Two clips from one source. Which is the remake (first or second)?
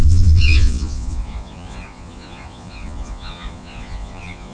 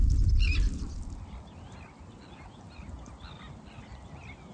first